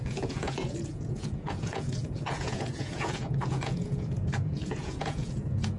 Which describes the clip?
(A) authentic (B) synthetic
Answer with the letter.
B